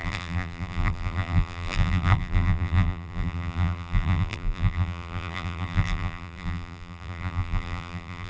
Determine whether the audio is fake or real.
fake